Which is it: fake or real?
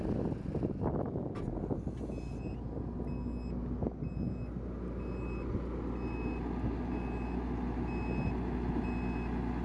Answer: real